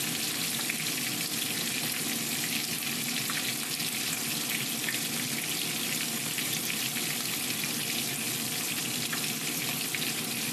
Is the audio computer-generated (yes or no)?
no